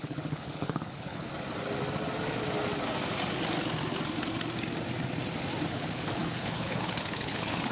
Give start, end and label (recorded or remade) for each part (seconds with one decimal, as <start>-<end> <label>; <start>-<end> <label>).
0.0-1.3 remade; 1.3-5.7 recorded; 5.7-7.7 remade

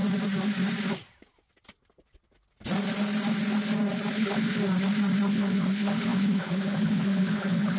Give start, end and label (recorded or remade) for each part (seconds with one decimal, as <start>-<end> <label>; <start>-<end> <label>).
0.0-4.1 recorded; 4.1-4.6 remade; 4.6-5.3 recorded; 5.3-7.8 remade

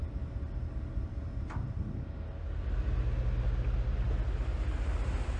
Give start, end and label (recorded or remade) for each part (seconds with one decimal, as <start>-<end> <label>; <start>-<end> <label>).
0.0-5.4 recorded

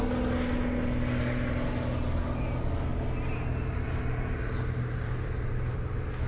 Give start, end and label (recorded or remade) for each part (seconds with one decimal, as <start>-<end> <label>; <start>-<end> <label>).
0.0-6.3 recorded

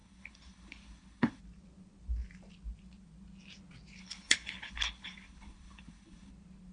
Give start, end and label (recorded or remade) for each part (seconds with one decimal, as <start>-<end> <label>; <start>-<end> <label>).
0.0-1.4 remade; 1.4-4.0 recorded; 4.0-6.3 remade; 6.3-6.7 recorded

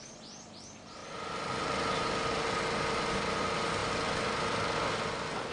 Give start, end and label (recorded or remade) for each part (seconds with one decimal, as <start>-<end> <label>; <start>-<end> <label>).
0.0-5.5 recorded

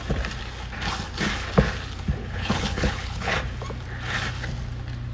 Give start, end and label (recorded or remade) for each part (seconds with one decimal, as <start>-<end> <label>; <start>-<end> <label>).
0.0-2.2 recorded; 2.2-3.3 remade; 3.3-5.1 recorded